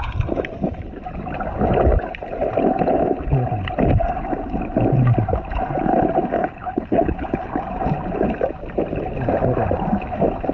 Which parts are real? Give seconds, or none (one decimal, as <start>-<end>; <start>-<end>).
0.0-6.4; 7.5-10.5